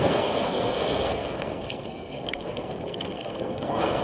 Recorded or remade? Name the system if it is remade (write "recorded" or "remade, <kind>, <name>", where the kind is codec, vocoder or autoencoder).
remade, codec, SNAC